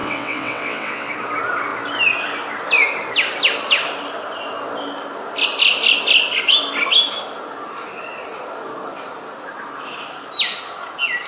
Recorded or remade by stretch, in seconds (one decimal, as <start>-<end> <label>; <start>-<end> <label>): 0.0-1.1 remade; 1.1-11.3 recorded